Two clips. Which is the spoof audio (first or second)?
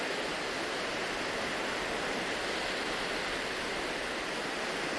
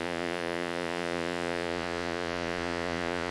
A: second